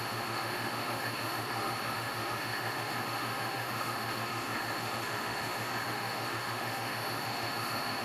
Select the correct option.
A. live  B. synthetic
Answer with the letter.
B